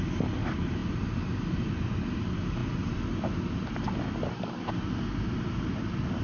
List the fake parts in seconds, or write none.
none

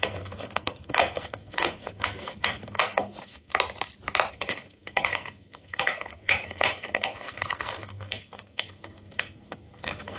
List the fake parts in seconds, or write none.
0.0-3.5; 4.3-10.2

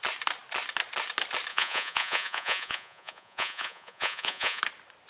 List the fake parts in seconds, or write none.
1.5-4.6

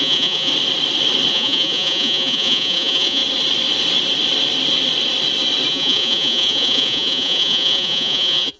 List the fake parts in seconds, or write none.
0.0-0.5; 1.3-3.2; 5.7-8.6

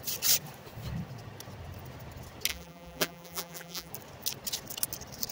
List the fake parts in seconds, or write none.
2.5-3.9

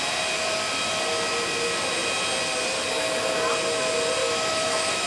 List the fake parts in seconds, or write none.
4.2-5.1